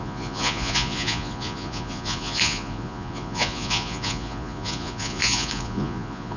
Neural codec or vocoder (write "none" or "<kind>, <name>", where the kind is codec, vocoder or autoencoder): vocoder, Vocos